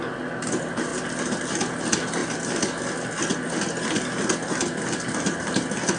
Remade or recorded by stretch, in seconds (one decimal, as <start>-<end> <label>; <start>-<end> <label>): 0.0-6.0 recorded